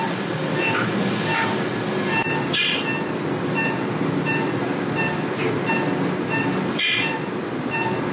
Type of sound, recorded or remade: remade